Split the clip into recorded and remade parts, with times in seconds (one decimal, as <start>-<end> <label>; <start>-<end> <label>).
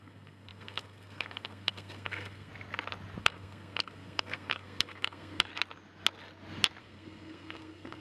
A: 0.0-2.5 remade; 2.5-3.2 recorded; 3.2-5.5 remade; 5.5-6.8 recorded; 6.8-8.0 remade